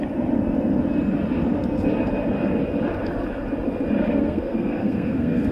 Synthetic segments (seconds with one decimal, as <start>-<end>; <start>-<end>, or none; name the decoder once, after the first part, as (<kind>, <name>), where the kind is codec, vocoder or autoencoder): 4.0-5.5 (codec, SNAC)

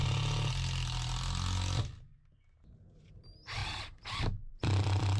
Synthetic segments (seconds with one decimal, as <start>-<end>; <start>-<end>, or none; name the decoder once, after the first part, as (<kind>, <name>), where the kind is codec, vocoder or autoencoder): none

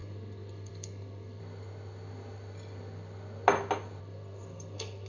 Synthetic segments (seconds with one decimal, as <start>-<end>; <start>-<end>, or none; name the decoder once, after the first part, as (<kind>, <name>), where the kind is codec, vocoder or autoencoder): 0.0-1.4 (codec, SNAC); 4.0-5.1

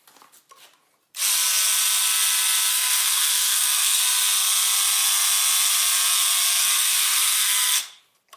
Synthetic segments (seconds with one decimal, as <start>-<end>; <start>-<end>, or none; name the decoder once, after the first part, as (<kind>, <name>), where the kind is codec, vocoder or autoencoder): 2.7-4.0 (codec, SNAC); 6.6-8.0

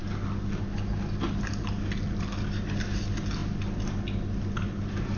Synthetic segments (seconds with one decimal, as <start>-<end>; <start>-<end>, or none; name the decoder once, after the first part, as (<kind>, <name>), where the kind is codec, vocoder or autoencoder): none

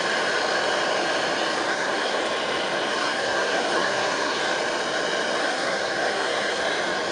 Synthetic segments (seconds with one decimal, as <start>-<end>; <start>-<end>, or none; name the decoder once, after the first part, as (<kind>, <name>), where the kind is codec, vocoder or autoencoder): 1.7-2.2 (codec, SNAC); 3.0-4.4; 5.4-6.6

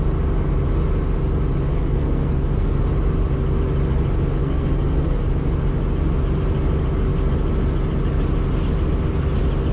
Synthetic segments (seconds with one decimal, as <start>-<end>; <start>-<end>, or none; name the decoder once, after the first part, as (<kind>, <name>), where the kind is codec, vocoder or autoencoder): 1.7-2.8 (codec, SNAC); 4.4-5.2